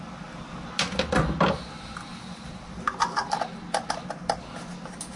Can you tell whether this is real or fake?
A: real